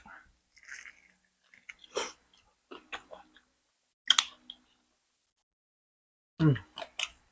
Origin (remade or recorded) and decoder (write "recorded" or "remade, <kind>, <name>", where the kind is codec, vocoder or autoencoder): recorded